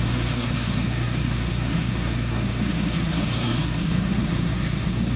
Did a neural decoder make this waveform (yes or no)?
yes